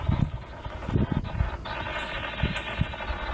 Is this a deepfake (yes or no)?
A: no